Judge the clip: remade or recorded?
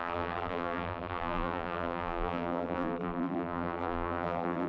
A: remade